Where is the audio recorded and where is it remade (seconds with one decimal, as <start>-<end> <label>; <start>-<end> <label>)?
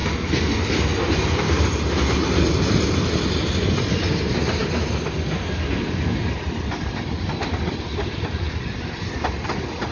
0.0-9.9 recorded